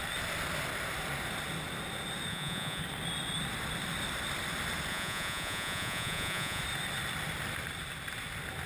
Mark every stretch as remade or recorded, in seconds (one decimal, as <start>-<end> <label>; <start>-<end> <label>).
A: 0.0-2.3 recorded; 2.3-2.8 remade; 2.8-4.9 recorded; 4.9-6.6 remade; 6.6-8.7 recorded